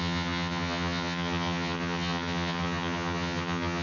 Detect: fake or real fake